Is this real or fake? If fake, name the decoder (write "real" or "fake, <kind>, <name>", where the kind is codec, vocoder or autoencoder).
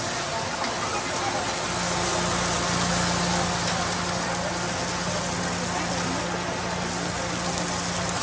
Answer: real